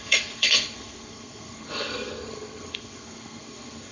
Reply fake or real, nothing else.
fake